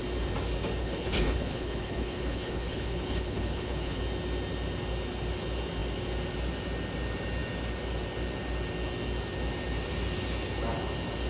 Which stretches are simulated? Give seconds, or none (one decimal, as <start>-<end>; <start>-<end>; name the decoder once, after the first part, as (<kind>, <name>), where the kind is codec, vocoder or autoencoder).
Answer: 0.8-4.0 (codec, HILCodec)